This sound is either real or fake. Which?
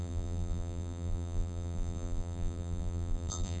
fake